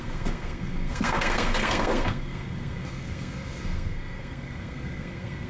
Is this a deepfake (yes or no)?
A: yes